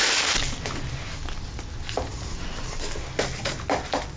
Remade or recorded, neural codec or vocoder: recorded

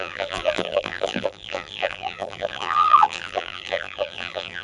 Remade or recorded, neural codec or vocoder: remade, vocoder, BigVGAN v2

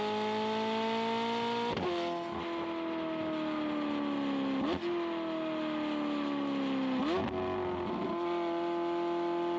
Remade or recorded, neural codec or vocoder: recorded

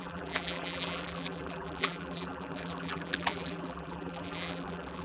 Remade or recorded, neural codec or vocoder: remade, vocoder, BigVGAN v2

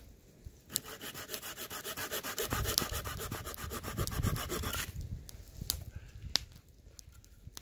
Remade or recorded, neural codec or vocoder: recorded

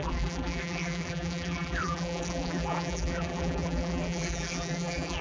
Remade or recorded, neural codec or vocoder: remade, vocoder, BigVGAN v2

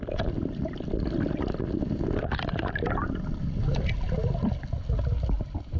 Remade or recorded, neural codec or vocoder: recorded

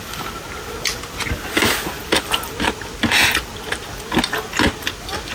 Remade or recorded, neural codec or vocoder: recorded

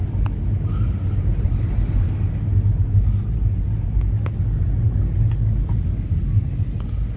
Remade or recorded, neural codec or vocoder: recorded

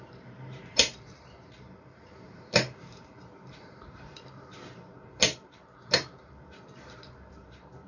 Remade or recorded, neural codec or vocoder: remade, vocoder, BigVGAN v2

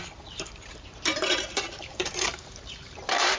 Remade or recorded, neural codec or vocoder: remade, vocoder, BigVGAN v2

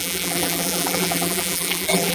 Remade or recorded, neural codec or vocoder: remade, vocoder, BigVGAN v2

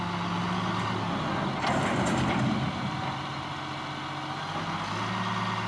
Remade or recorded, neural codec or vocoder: recorded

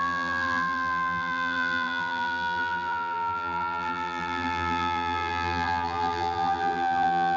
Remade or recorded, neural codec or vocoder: remade, vocoder, BigVGAN v2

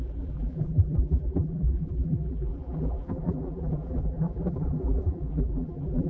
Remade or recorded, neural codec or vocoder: remade, vocoder, BigVGAN v2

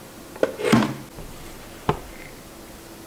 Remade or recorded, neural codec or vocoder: recorded